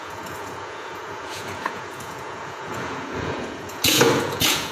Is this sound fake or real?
fake